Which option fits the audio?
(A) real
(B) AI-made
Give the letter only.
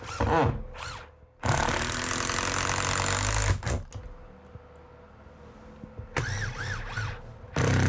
A